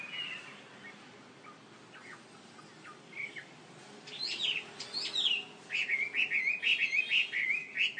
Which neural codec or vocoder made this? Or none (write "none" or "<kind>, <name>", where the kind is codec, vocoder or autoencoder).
none